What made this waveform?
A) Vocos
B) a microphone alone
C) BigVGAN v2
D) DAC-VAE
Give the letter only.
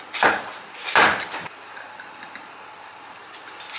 C